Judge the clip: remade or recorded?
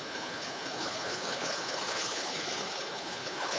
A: remade